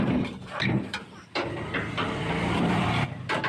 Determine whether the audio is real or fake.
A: fake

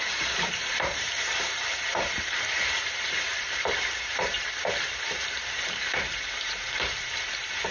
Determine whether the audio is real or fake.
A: fake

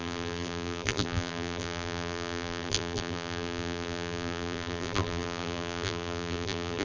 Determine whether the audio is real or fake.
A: fake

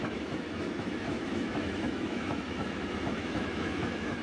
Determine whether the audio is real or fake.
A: fake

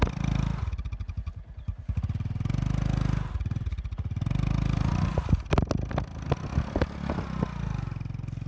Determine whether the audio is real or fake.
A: real